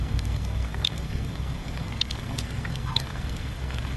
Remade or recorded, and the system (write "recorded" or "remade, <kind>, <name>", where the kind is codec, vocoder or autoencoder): remade, codec, SNAC